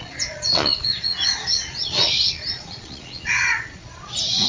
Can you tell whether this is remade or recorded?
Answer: remade